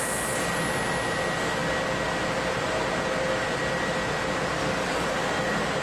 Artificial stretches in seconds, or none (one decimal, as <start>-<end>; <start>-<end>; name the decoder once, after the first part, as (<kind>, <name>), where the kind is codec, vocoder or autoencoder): 4.6-5.1 (codec, DAC)